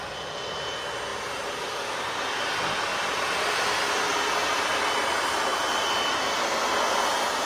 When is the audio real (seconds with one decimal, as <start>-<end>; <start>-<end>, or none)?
0.0-1.1; 1.9-2.9; 3.6-5.5; 6.8-7.5